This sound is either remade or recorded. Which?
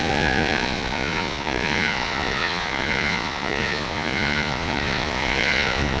remade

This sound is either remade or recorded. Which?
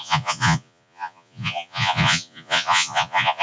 remade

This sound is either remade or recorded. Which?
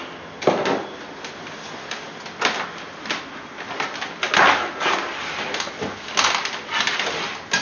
recorded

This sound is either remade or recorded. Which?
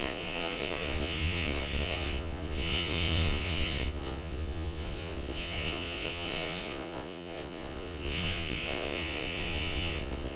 remade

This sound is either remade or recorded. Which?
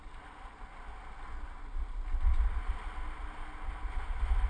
recorded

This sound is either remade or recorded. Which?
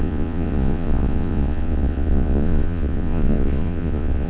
remade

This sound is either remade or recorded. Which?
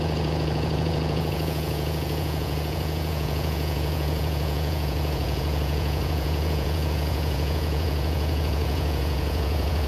remade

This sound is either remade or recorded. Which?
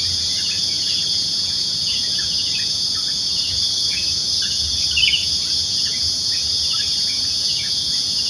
remade